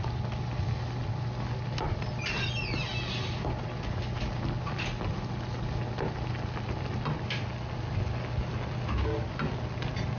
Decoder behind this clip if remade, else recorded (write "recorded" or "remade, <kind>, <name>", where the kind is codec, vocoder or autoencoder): recorded